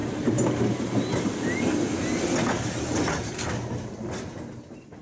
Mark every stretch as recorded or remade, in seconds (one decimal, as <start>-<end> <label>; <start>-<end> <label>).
0.0-1.3 remade; 1.3-5.0 recorded